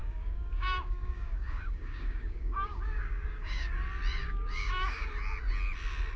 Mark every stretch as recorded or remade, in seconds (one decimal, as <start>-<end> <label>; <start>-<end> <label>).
0.0-3.7 remade; 3.7-4.2 recorded; 4.2-5.1 remade; 5.1-6.2 recorded